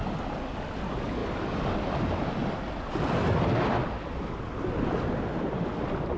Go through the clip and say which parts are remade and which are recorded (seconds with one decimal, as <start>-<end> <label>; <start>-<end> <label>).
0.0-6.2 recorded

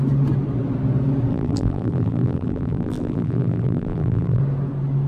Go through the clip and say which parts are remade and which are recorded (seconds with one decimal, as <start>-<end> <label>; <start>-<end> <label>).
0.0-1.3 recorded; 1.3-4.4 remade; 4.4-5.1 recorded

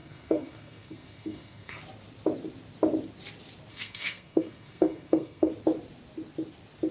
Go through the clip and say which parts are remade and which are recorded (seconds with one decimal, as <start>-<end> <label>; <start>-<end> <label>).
0.0-1.8 remade; 1.8-3.7 recorded; 3.7-5.5 remade; 5.5-6.9 recorded